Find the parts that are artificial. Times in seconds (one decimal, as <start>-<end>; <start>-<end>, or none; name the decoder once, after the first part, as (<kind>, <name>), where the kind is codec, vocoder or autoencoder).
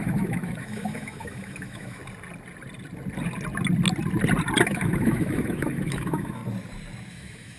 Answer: 0.0-2.0 (autoencoder, DAC-VAE); 4.6-6.4; 7.1-7.6